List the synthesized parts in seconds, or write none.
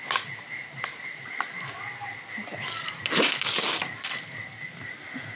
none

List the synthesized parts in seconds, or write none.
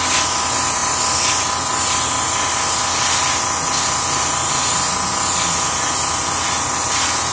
none